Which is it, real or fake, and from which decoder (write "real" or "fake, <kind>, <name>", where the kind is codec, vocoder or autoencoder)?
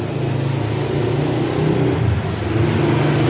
real